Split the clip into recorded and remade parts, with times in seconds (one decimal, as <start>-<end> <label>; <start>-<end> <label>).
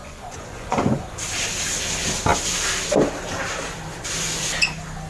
0.0-1.1 remade; 1.1-5.1 recorded